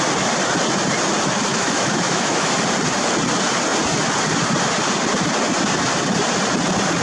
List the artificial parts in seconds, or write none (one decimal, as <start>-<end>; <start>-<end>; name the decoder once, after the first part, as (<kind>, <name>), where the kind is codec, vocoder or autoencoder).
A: 1.5-2.5 (autoencoder, DAC-VAE)